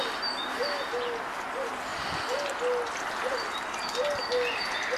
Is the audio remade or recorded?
recorded